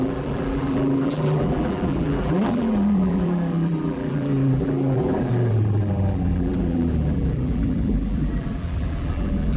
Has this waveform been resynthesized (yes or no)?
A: yes